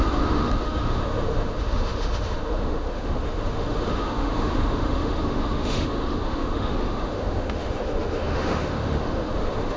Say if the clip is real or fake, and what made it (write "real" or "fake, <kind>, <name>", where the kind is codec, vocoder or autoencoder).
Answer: fake, autoencoder, DAC-VAE